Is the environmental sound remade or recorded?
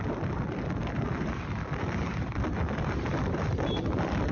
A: remade